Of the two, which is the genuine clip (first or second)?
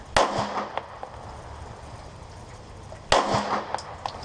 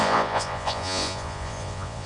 first